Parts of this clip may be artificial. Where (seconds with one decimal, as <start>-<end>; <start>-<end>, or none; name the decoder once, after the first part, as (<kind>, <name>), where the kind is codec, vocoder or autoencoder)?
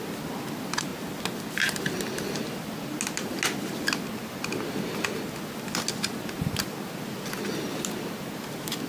none